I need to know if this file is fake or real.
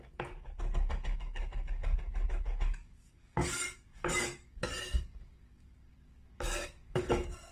fake